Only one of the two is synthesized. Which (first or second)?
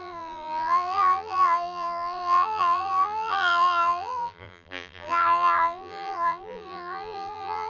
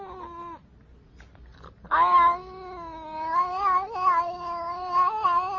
first